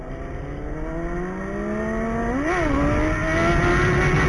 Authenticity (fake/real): real